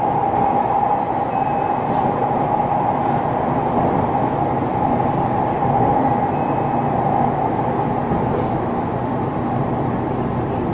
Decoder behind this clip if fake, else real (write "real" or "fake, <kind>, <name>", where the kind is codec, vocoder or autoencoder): real